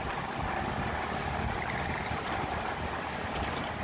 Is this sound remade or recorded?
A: recorded